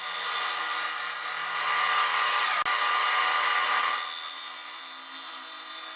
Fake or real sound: real